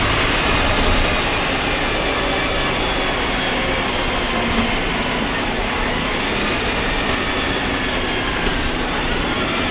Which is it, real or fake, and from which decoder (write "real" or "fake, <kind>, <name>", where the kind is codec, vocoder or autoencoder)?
real